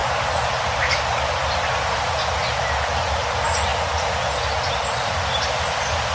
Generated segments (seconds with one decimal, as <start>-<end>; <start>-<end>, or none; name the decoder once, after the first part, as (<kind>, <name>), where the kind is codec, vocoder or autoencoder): none